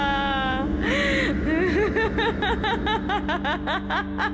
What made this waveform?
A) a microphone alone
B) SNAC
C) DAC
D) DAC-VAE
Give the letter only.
A